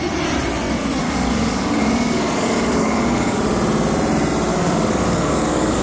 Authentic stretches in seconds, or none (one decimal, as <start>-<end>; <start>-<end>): 0.0-1.0; 3.4-4.5